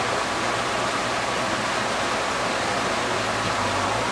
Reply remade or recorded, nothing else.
recorded